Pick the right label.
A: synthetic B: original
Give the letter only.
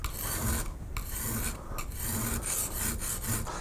B